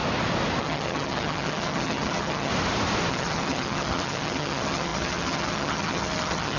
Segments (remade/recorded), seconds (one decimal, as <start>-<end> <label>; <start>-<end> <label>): 0.0-0.6 recorded; 0.6-2.5 remade; 2.5-3.1 recorded; 3.1-6.6 remade